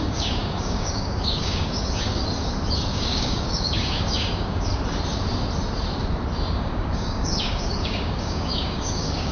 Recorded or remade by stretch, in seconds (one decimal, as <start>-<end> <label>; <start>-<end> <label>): 0.0-2.2 remade; 2.2-2.9 recorded; 2.9-4.7 remade; 4.7-6.5 recorded; 6.5-9.3 remade